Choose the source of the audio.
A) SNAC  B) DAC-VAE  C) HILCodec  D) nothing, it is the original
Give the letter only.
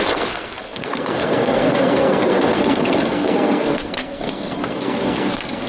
A